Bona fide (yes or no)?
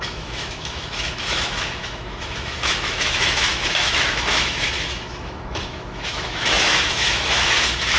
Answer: no